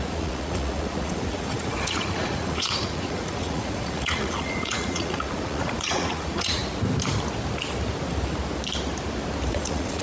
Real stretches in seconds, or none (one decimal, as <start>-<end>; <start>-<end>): 6.6-9.5